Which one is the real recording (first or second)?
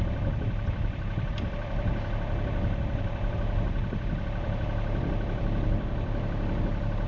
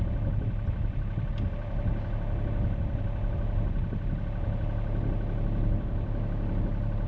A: second